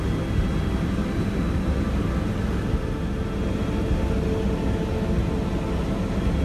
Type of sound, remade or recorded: recorded